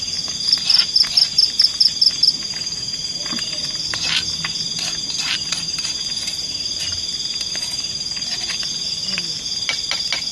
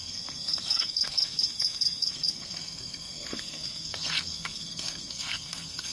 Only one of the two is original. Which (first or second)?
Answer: first